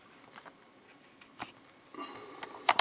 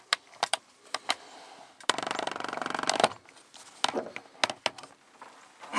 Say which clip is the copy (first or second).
first